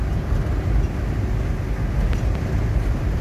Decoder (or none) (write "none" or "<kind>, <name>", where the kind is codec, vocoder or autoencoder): none